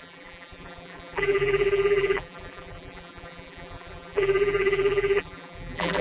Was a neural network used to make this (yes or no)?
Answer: yes